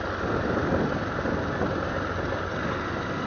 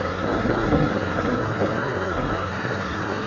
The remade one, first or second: second